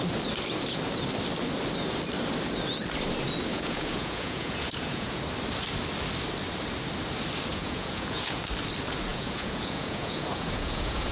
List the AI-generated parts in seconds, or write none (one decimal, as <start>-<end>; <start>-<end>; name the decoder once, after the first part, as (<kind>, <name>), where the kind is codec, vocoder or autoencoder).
3.5-5.2 (vocoder, Vocos); 7.5-8.4; 9.1-11.1